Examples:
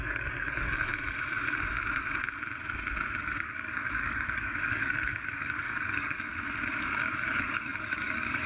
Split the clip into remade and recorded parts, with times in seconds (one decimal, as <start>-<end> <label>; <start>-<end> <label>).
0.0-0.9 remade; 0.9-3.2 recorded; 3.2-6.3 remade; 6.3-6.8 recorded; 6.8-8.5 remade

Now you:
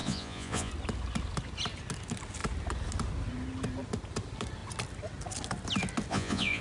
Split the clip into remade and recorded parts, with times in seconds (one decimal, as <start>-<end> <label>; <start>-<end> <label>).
0.0-0.7 remade; 0.7-6.1 recorded; 6.1-6.6 remade

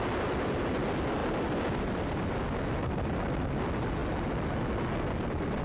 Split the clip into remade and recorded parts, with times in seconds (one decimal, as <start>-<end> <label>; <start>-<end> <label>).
0.0-5.6 recorded